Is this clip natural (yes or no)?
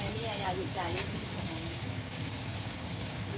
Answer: no